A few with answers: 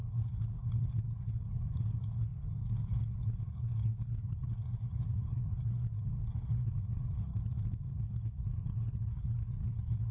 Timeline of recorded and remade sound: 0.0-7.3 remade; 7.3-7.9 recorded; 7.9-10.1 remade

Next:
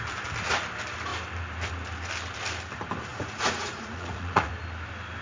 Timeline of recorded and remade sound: 0.0-3.1 recorded; 3.1-4.5 remade; 4.5-5.2 recorded

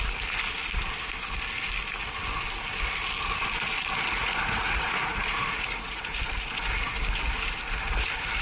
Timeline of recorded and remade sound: 0.0-4.2 recorded; 4.2-6.0 remade; 6.0-8.4 recorded

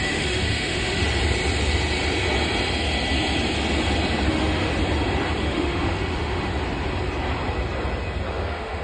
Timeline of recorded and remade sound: 0.0-1.0 remade; 1.0-4.3 recorded; 4.3-4.7 remade; 4.7-5.4 recorded; 5.4-6.5 remade; 6.5-8.3 recorded; 8.3-8.8 remade